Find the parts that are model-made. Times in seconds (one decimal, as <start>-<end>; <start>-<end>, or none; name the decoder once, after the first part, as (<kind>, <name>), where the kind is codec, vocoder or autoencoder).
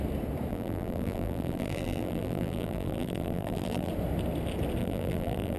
0.5-3.9 (vocoder, BigVGAN v2); 4.8-5.6